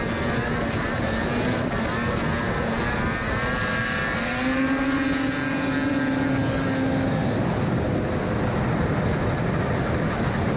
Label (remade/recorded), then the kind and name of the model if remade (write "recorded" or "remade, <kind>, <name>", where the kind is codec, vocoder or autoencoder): recorded